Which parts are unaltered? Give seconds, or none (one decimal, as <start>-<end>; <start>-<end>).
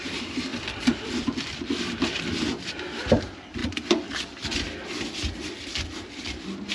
0.0-0.5; 2.7-3.6